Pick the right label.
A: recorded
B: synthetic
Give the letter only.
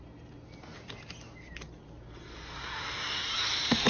A